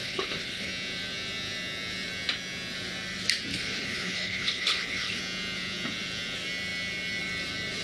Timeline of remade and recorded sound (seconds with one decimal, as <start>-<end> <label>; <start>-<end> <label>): 0.0-0.7 remade; 0.7-3.5 recorded; 3.5-5.2 remade; 5.2-7.8 recorded